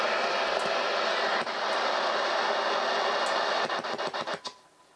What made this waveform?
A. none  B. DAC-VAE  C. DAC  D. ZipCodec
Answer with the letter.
A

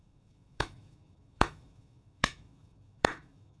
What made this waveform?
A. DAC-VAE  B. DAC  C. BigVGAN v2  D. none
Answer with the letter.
A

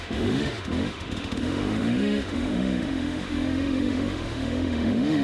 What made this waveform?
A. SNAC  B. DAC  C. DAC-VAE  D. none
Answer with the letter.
C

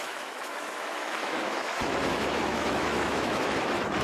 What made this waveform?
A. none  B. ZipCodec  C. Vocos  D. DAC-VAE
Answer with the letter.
D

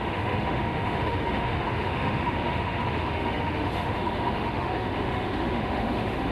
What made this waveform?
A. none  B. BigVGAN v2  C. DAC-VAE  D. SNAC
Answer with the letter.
C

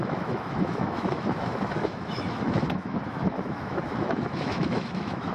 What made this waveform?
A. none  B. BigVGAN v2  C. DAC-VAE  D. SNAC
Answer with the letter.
C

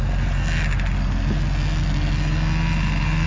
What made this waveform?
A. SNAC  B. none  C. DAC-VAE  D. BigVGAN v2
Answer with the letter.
B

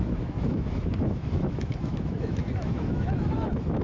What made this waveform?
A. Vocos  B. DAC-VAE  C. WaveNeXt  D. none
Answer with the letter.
B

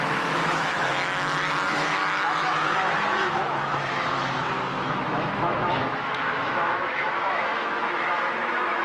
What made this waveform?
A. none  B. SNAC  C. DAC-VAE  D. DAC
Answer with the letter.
C